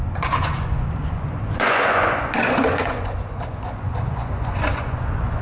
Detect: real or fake fake